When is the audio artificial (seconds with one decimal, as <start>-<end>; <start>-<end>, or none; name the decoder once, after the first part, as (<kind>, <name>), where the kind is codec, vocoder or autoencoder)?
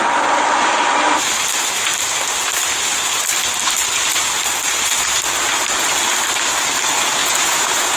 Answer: 7.2-8.0 (vocoder, Vocos)